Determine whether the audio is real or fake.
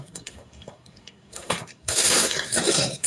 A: fake